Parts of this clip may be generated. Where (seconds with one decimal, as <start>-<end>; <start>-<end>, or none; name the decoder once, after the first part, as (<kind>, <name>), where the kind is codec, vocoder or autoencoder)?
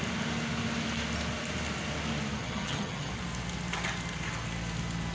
2.4-3.1 (vocoder, HiFi-GAN)